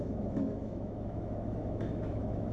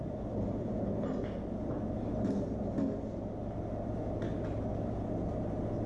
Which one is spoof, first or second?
first